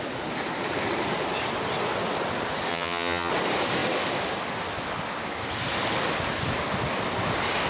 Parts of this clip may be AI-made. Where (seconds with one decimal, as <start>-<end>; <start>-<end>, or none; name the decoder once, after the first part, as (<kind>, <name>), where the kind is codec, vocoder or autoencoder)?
2.7-3.3 (vocoder, HiFi-GAN)